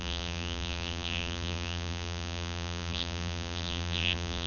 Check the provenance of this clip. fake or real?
fake